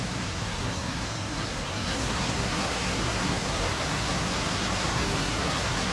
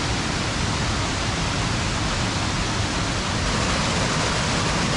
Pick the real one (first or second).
second